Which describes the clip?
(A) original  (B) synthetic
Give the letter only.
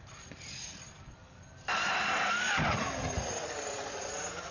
A